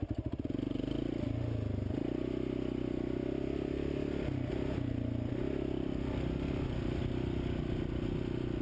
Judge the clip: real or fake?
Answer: real